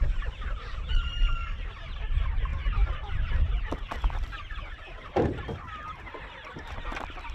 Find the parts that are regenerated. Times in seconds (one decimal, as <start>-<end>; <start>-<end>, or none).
0.0-7.3